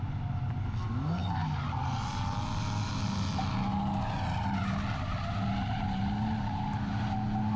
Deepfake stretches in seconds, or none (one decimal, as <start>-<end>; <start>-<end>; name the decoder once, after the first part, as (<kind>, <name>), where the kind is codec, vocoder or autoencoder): none